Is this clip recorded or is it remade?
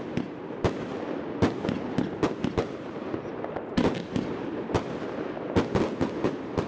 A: recorded